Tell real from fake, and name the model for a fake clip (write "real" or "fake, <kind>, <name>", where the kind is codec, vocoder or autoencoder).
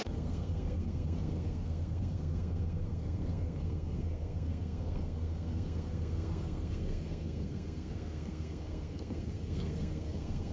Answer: fake, codec, SNAC